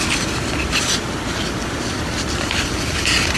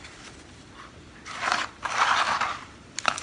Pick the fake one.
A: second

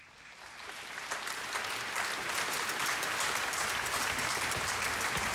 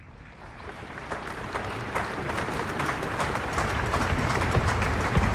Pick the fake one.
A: second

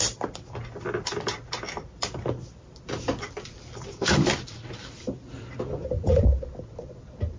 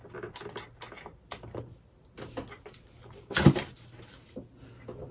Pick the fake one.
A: first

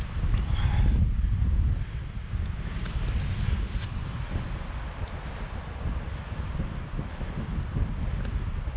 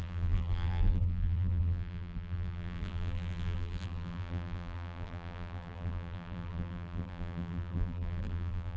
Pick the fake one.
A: second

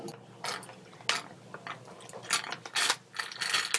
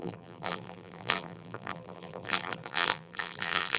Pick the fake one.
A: second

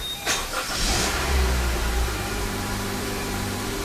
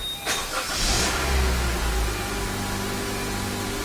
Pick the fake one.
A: first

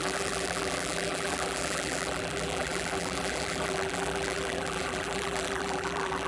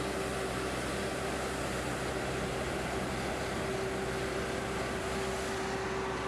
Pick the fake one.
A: first